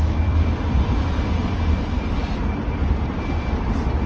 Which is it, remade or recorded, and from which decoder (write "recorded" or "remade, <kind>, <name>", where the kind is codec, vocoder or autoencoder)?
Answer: remade, vocoder, BigVGAN v2